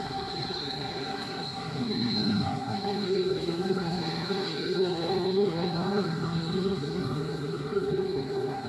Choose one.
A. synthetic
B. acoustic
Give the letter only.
A